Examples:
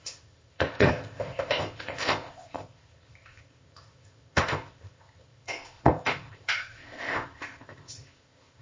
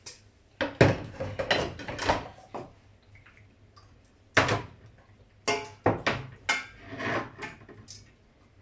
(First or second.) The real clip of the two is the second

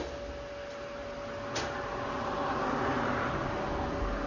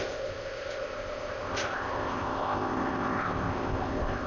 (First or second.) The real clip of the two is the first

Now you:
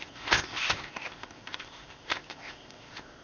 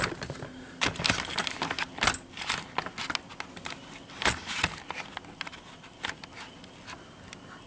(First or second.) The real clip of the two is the second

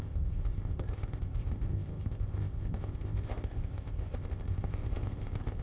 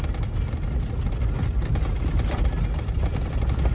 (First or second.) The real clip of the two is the second